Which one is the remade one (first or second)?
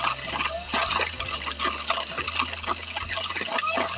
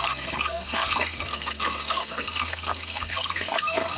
second